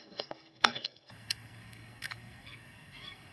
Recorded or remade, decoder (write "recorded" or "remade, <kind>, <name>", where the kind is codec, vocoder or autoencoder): remade, codec, SNAC